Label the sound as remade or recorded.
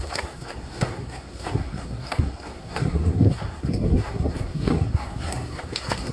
remade